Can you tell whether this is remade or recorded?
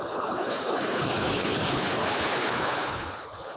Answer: remade